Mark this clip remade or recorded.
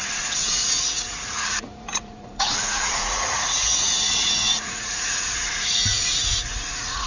remade